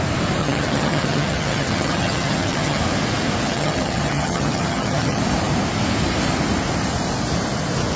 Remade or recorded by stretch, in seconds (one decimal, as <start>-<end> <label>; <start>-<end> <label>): 0.0-0.4 recorded; 0.4-2.8 remade; 2.8-3.4 recorded; 3.4-5.2 remade; 5.2-8.0 recorded